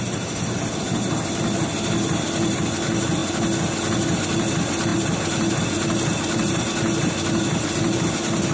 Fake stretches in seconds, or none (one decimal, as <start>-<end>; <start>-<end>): none

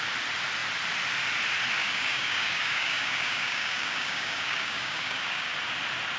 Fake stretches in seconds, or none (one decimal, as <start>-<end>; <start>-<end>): 1.8-5.5